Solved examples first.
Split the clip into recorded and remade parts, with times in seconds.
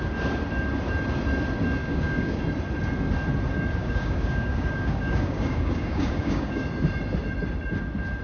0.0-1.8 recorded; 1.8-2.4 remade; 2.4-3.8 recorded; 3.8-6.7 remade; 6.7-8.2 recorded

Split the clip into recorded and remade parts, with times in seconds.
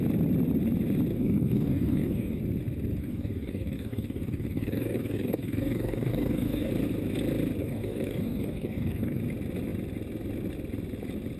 0.0-1.1 recorded; 1.1-2.4 remade; 2.4-3.0 recorded; 3.0-6.7 remade; 6.7-7.6 recorded; 7.6-9.2 remade; 9.2-11.4 recorded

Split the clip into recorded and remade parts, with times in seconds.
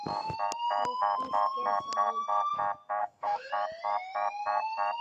0.0-3.0 recorded; 3.0-3.5 remade; 3.5-5.0 recorded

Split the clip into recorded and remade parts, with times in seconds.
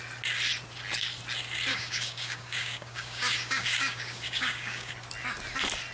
0.0-1.7 recorded; 1.7-4.9 remade; 4.9-5.9 recorded